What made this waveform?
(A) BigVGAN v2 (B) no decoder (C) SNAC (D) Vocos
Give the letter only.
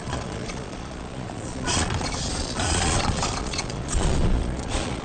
D